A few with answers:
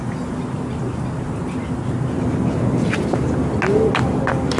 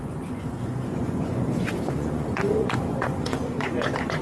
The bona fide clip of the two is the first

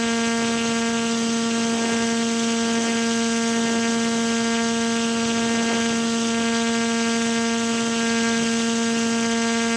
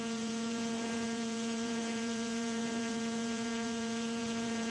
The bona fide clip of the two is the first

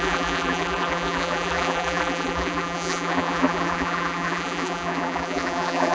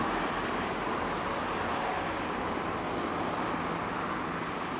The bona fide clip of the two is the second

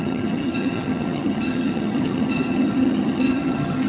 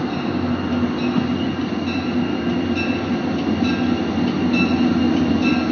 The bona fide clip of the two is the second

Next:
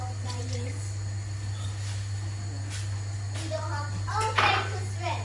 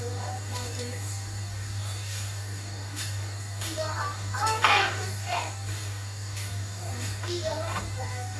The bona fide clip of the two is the first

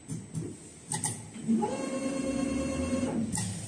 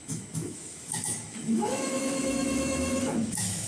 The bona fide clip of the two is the first